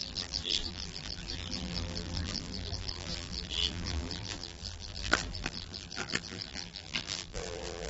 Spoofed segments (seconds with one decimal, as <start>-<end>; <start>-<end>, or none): 0.0-7.9